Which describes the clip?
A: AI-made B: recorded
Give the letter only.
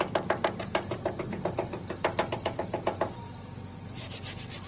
B